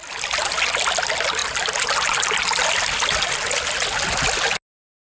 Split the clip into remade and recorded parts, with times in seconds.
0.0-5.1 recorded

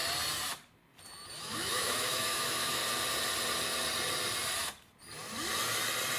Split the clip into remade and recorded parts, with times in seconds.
0.0-1.4 recorded; 1.4-2.8 remade; 2.8-6.2 recorded

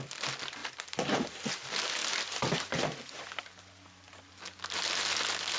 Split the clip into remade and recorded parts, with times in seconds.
0.0-0.6 recorded; 0.6-1.5 remade; 1.5-2.0 recorded; 2.0-3.0 remade; 3.0-5.6 recorded

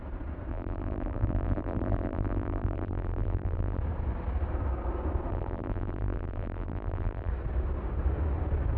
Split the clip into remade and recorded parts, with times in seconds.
0.0-0.5 recorded; 0.5-3.8 remade; 3.8-5.3 recorded; 5.3-7.3 remade; 7.3-8.8 recorded

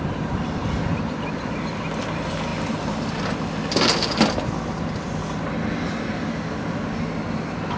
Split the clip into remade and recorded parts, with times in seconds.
0.0-7.8 recorded

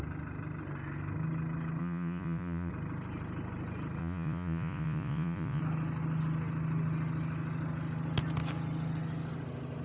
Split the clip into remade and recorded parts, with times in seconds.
0.0-1.8 recorded; 1.8-2.7 remade; 2.7-4.0 recorded; 4.0-5.6 remade; 5.6-9.8 recorded

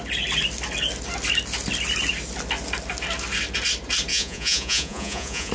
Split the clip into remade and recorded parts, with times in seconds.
0.0-4.1 recorded; 4.1-5.5 remade

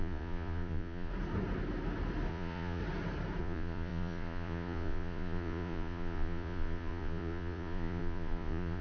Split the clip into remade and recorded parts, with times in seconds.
0.0-1.1 remade; 1.1-2.3 recorded; 2.3-2.8 remade; 2.8-3.4 recorded; 3.4-8.8 remade